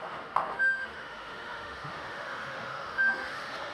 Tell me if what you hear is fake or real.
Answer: fake